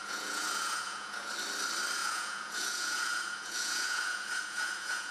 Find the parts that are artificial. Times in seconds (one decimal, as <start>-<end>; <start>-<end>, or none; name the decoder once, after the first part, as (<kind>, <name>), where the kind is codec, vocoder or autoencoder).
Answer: 0.0-1.3 (vocoder, Vocos); 2.0-5.1